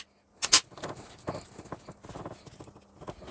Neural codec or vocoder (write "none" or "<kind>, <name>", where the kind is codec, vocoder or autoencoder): none